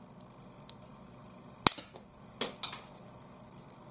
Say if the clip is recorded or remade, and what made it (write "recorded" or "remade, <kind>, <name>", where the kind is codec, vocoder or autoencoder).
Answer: recorded